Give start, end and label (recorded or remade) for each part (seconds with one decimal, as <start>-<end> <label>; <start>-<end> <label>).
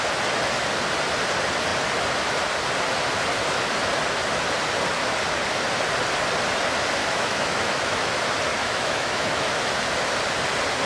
0.0-7.0 recorded; 7.0-8.1 remade; 8.1-8.6 recorded; 8.6-9.6 remade; 9.6-10.9 recorded